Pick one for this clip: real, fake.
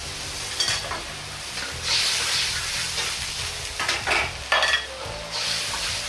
real